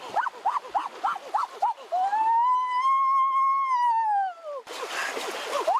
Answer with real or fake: real